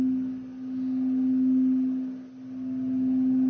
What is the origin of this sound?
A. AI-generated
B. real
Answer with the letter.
B